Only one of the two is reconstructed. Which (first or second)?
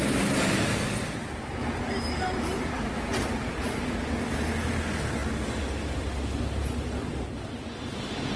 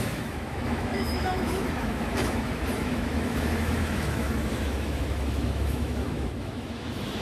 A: second